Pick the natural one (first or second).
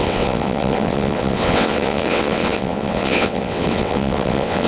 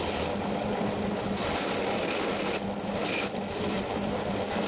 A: second